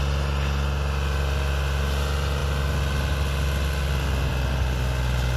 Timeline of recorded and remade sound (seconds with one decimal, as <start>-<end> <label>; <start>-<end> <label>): 0.0-5.4 recorded